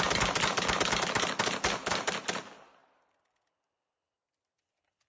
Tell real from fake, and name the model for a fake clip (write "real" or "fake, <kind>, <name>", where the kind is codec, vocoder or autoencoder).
real